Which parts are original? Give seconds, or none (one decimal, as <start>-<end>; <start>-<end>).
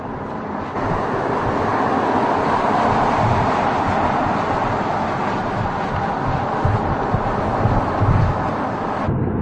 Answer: 0.0-9.4